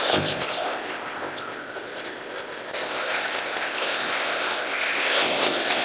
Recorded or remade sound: remade